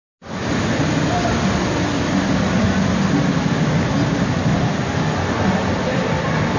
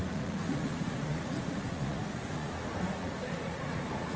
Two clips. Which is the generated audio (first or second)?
second